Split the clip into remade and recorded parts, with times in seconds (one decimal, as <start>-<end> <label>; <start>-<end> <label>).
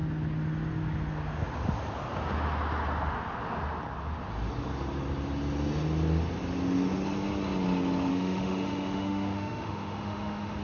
0.0-8.1 recorded; 8.1-10.6 remade